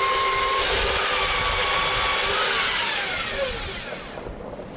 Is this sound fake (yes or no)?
no